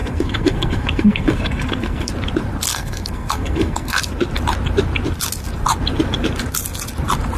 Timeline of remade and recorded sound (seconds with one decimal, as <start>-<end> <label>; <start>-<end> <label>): 0.0-2.1 remade; 2.1-2.7 recorded; 2.7-4.1 remade; 4.1-7.4 recorded